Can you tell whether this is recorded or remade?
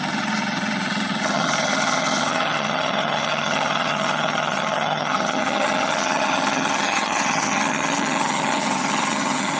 remade